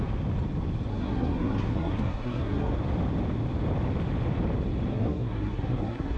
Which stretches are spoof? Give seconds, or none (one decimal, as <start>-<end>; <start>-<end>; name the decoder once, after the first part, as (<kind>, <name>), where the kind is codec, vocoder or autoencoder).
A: 0.9-2.7 (codec, SNAC); 4.9-6.2